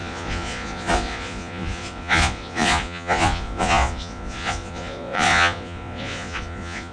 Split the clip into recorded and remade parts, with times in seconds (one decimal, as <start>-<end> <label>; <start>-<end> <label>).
0.0-6.9 remade